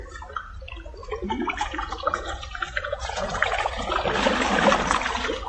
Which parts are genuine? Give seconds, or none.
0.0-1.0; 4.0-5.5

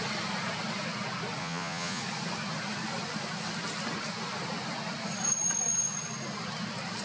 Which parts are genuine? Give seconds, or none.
0.0-1.4; 2.0-7.0

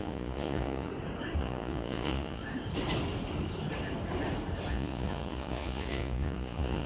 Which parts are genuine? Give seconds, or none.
0.9-1.4; 2.4-4.7

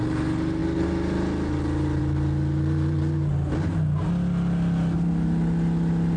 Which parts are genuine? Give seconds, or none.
0.0-6.2

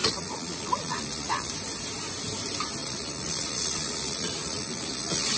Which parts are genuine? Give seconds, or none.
1.5-2.8